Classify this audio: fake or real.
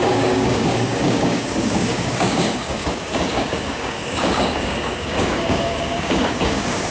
fake